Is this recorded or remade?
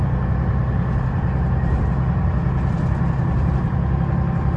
recorded